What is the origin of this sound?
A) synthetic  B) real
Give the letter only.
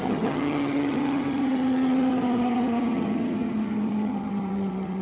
A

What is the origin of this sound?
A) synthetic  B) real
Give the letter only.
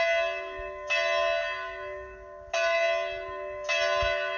B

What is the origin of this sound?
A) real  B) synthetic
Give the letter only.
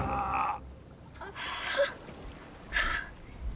A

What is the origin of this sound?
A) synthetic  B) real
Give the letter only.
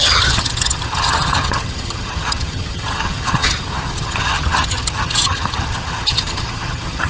A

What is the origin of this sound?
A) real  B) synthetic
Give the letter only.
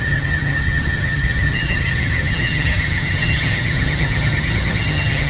B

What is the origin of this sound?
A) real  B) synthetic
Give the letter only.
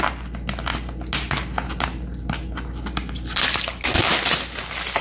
A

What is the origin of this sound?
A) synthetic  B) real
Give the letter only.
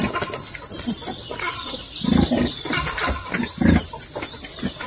B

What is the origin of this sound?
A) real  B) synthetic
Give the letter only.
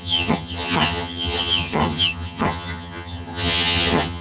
B